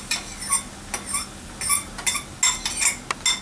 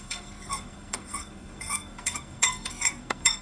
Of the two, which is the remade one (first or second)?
second